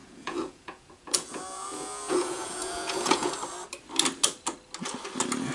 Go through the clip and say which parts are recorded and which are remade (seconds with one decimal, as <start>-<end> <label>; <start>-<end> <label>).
0.0-3.3 remade; 3.3-5.5 recorded